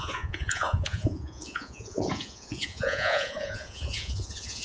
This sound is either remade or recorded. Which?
remade